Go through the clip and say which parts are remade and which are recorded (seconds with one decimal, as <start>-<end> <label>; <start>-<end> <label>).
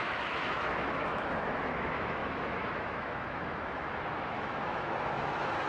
0.0-5.7 remade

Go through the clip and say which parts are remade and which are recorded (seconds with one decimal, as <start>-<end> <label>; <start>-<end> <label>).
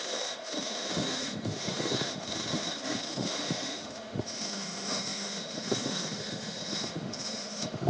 0.0-7.9 remade